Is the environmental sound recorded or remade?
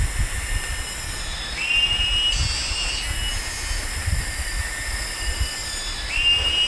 recorded